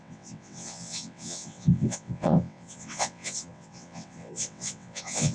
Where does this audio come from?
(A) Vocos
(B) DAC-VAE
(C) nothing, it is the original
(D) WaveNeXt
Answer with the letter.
D